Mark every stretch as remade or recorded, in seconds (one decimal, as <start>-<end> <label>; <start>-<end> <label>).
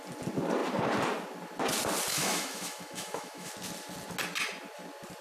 0.0-2.1 recorded; 2.1-3.5 remade; 3.5-5.2 recorded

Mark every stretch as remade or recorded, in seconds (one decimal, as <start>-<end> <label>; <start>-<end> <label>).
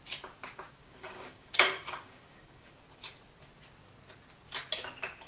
0.0-0.8 recorded; 0.8-2.7 remade; 2.7-5.3 recorded